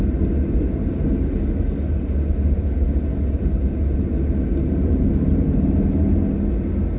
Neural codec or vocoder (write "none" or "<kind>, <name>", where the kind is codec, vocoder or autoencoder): none